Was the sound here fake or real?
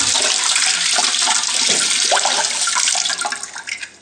real